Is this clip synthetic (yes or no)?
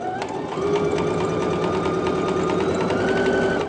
no